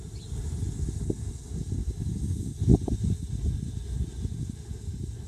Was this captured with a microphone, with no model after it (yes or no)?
yes